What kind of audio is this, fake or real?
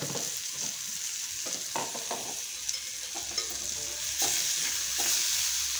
real